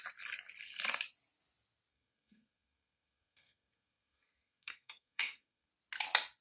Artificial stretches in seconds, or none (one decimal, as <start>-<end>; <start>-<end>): 1.9-5.7